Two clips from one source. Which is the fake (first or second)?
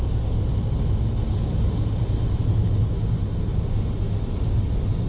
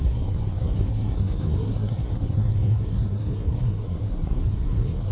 second